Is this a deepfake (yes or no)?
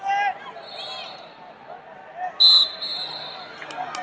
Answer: no